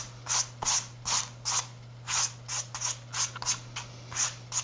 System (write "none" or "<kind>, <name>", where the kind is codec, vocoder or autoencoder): none